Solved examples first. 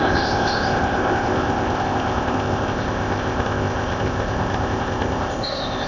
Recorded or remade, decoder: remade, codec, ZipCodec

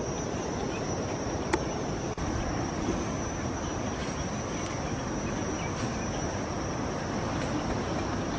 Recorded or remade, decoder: recorded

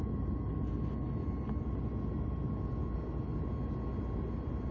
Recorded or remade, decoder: recorded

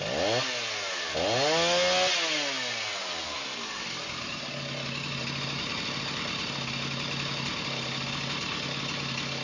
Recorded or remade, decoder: recorded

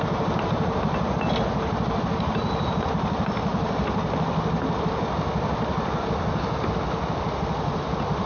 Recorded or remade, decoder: recorded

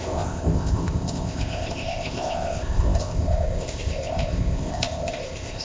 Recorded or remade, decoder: remade, codec, ZipCodec